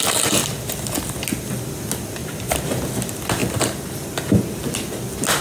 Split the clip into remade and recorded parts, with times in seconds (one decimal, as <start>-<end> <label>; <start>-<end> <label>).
0.0-2.2 recorded; 2.2-2.8 remade; 2.8-5.4 recorded